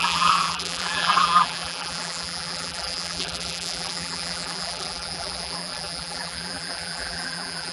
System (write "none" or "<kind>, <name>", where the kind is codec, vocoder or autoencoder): vocoder, BigVGAN v2